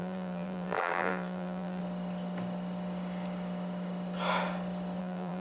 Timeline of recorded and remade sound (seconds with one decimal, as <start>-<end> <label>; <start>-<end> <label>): 0.0-1.8 remade; 1.8-5.0 recorded; 5.0-5.4 remade